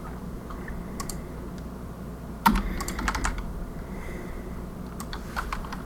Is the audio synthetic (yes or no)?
yes